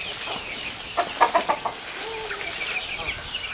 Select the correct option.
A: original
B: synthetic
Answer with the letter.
A